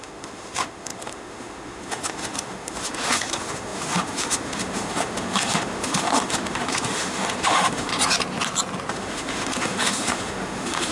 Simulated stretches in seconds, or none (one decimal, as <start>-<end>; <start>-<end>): 0.0-7.9; 8.9-10.9